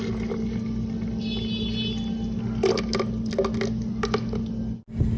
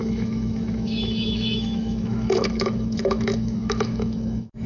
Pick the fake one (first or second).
second